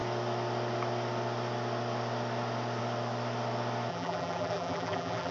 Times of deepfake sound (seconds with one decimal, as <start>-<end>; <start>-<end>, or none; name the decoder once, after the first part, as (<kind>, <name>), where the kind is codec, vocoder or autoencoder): 3.9-5.3 (vocoder, BigVGAN v2)